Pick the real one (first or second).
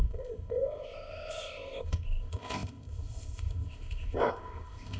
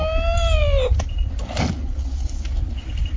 second